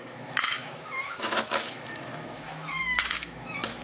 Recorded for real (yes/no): no